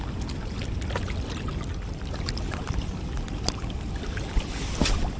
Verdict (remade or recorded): recorded